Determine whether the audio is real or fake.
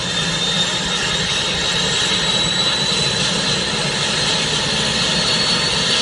real